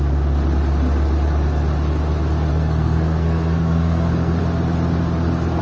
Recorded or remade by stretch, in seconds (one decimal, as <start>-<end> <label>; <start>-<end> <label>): 0.0-2.5 recorded; 2.5-4.4 remade; 4.4-5.6 recorded